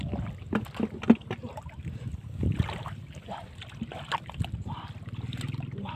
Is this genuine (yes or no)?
yes